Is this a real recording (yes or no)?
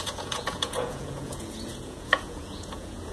no